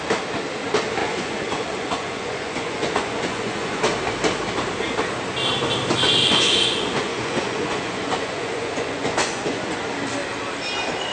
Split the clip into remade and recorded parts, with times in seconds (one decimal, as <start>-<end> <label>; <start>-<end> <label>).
0.0-1.0 recorded; 1.0-3.8 remade; 3.8-6.3 recorded; 6.3-9.8 remade; 9.8-11.1 recorded

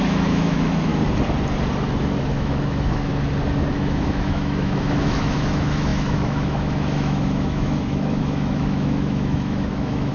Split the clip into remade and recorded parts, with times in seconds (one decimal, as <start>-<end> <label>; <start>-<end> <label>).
0.0-0.9 remade; 0.9-2.2 recorded; 2.2-3.1 remade; 3.1-3.7 recorded; 3.7-10.1 remade

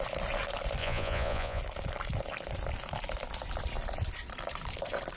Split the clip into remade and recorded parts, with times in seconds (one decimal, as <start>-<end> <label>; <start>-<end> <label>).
0.0-0.8 recorded; 0.8-1.6 remade; 1.6-5.2 recorded

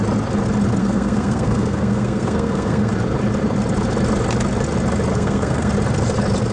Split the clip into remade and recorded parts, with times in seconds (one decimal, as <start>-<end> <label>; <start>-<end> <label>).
0.0-0.8 recorded; 0.8-2.9 remade; 2.9-5.1 recorded; 5.1-5.7 remade; 5.7-6.5 recorded

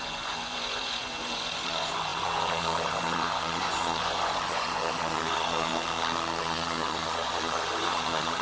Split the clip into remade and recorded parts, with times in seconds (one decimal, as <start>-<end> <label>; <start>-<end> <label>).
0.0-5.7 remade; 5.7-6.4 recorded; 6.4-8.4 remade